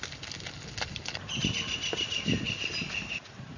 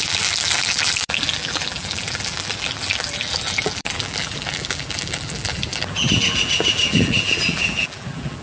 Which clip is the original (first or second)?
first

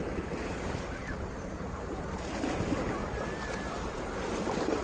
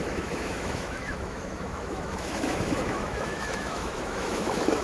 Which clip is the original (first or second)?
first